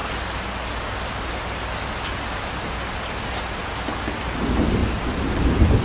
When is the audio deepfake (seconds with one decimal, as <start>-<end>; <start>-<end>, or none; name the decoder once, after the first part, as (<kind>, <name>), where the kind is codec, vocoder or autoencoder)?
none